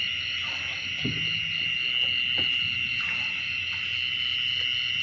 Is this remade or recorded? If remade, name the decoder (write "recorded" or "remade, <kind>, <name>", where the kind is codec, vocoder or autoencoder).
recorded